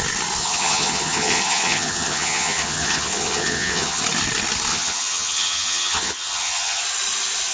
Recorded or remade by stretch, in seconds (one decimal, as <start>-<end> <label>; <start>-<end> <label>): 0.0-0.4 recorded; 0.4-4.0 remade; 4.0-4.7 recorded; 4.7-6.8 remade; 6.8-7.5 recorded